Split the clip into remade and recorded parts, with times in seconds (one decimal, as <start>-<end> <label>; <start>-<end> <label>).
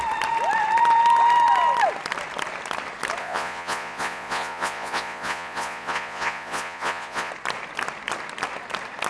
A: 0.0-3.2 recorded; 3.2-7.3 remade; 7.3-9.1 recorded